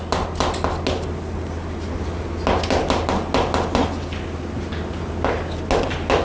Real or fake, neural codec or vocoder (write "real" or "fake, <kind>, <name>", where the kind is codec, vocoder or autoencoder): real